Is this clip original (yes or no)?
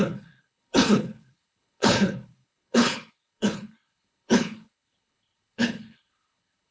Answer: no